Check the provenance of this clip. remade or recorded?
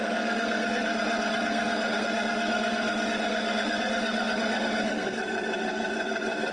remade